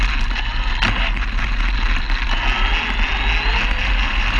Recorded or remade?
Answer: recorded